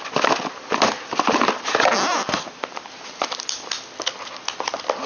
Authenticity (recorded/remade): recorded